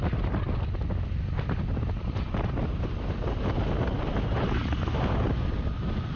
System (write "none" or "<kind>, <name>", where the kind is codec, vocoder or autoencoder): none